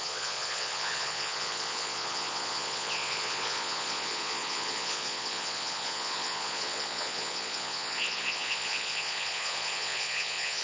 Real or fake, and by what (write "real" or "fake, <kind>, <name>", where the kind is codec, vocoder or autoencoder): fake, vocoder, Vocos